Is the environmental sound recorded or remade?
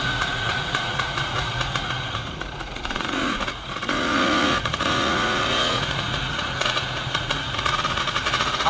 remade